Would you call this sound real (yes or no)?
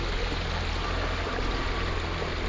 yes